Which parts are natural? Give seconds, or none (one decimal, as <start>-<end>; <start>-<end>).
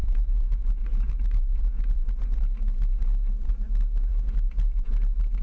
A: 2.4-4.1; 4.9-5.4